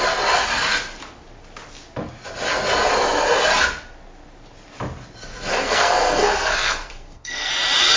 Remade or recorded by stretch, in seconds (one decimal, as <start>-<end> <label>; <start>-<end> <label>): 0.0-5.5 recorded; 5.5-7.5 remade; 7.5-8.0 recorded

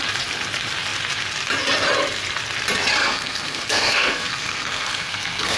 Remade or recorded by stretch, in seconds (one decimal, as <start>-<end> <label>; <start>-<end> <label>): 0.0-3.0 recorded; 3.0-5.6 remade